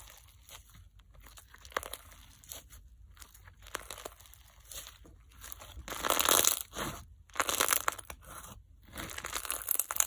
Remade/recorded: recorded